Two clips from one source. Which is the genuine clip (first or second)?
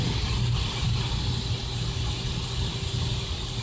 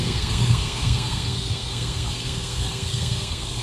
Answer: first